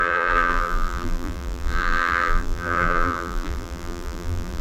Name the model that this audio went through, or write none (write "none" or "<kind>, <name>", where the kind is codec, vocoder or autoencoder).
vocoder, BigVGAN v2